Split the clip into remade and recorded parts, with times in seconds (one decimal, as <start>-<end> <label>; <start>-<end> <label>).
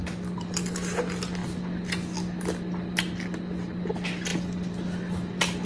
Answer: 0.0-5.7 recorded